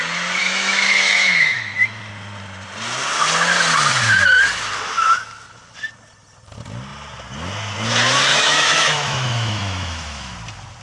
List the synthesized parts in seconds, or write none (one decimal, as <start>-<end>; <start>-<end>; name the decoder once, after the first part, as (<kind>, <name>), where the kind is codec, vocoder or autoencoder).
0.4-2.1 (autoencoder, DAC-VAE); 8.3-10.3